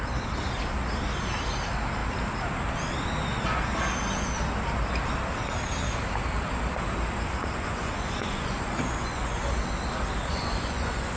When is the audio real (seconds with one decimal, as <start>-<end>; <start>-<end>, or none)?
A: 0.0-7.4; 9.4-10.3